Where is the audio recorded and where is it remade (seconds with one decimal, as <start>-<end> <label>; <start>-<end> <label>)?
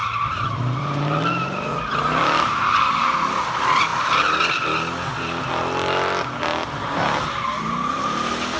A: 0.0-1.7 remade; 1.7-3.9 recorded; 3.9-4.4 remade; 4.4-8.6 recorded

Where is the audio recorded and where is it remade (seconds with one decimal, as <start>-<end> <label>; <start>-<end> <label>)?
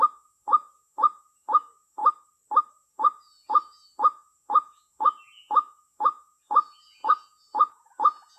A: 0.0-2.0 remade; 2.0-2.7 recorded; 2.7-8.4 remade